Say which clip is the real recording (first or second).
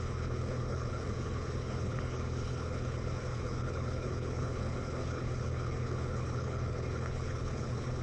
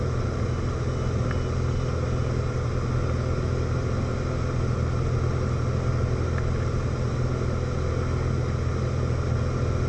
second